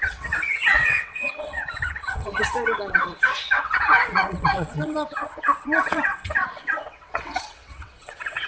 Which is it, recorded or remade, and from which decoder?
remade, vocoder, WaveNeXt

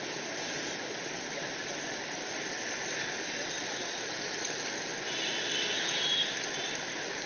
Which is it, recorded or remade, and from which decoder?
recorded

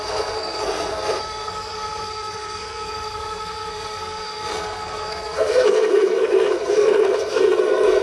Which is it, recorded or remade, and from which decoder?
remade, codec, SNAC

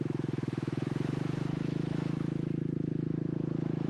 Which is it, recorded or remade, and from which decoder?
remade, autoencoder, DAC-VAE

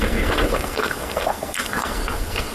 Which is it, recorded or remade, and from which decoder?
remade, codec, SNAC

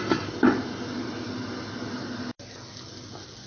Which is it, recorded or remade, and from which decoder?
recorded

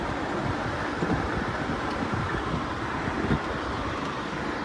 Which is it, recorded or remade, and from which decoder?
remade, vocoder, BigVGAN v2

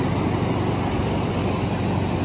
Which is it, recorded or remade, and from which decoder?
recorded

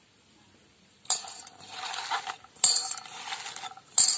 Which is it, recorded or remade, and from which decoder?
recorded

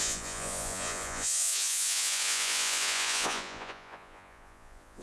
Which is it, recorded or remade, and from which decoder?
remade, vocoder, Vocos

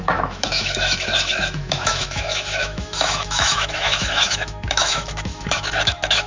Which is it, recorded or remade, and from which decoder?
remade, autoencoder, DAC-VAE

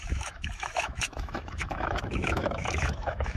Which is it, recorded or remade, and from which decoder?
remade, autoencoder, DAC-VAE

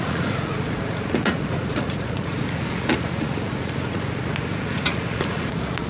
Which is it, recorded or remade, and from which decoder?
remade, vocoder, Vocos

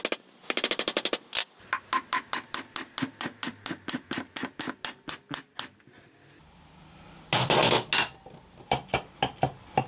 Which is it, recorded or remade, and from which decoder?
recorded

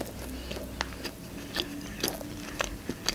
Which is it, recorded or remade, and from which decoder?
recorded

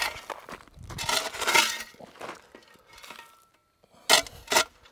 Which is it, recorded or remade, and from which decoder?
recorded